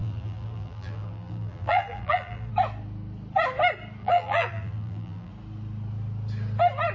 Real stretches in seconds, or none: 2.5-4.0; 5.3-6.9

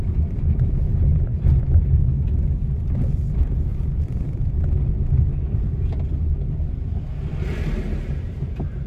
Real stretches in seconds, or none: 0.0-1.3; 2.0-3.7; 4.9-8.9

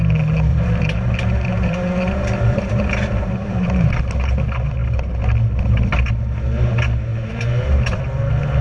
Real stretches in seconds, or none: 0.0-0.5; 3.9-7.1; 8.0-8.6